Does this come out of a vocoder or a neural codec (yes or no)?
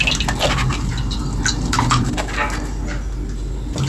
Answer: no